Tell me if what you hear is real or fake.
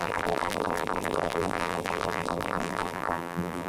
fake